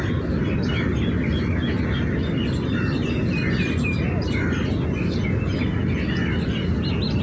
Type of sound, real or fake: real